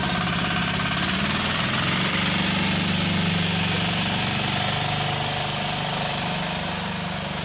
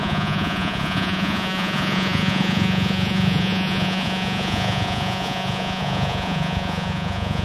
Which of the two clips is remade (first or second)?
second